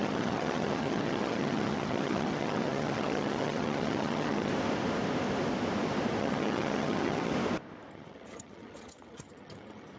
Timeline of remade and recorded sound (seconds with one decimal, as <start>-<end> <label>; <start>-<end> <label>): 0.0-4.5 remade; 4.5-6.2 recorded; 6.2-7.3 remade; 7.3-7.9 recorded; 7.9-10.0 remade